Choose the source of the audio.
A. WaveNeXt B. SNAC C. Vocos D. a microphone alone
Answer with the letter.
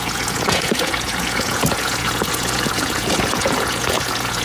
C